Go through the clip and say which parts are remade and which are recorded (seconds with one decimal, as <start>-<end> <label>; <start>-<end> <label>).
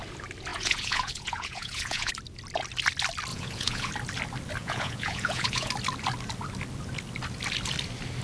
0.0-0.5 recorded; 0.5-2.1 remade; 2.1-3.3 recorded; 3.3-3.9 remade; 3.9-4.6 recorded; 4.6-5.7 remade; 5.7-8.2 recorded